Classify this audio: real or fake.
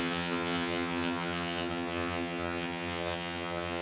fake